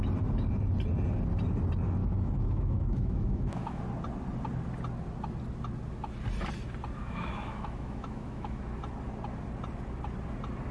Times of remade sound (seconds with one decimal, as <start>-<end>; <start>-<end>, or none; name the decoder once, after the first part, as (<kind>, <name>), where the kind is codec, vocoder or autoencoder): 2.0-3.8 (autoencoder, DAC-VAE); 7.0-8.6